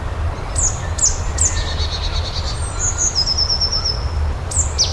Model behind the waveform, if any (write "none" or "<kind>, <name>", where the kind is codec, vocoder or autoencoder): none